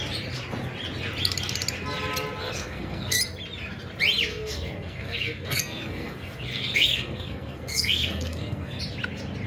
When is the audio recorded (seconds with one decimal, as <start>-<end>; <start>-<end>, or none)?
0.0-2.4; 3.2-4.3; 8.8-9.5